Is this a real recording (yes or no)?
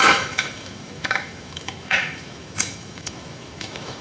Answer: no